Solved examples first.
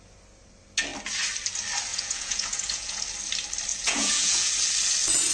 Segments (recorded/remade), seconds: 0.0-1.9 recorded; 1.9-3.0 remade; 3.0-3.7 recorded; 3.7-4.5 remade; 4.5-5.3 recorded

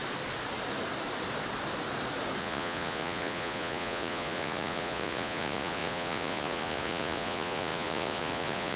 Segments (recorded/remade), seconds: 0.0-2.4 recorded; 2.4-8.8 remade